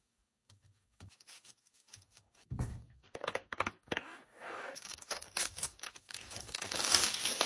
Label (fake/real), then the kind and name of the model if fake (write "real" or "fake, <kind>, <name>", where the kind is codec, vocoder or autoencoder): fake, codec, DAC